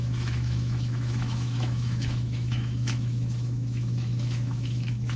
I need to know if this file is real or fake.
fake